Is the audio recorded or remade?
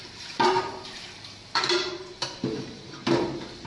remade